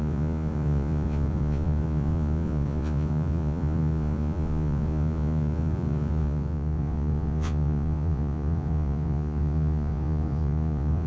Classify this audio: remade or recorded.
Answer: remade